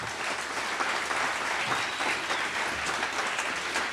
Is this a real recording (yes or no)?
yes